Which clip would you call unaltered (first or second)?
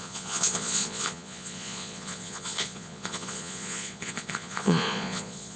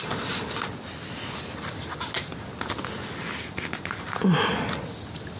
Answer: second